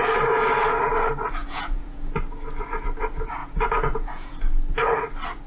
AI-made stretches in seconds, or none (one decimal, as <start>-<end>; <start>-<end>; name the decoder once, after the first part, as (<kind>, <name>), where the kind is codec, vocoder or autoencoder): 1.4-2.1 (vocoder, Vocos); 3.4-4.4